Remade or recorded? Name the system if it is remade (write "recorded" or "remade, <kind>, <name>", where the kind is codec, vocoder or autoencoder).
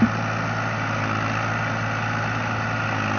recorded